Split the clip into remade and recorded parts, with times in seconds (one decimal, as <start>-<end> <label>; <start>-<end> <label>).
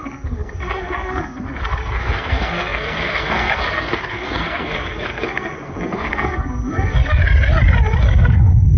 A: 0.0-7.2 remade; 7.2-8.0 recorded; 8.0-8.8 remade